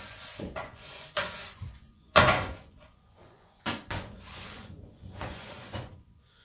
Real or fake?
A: fake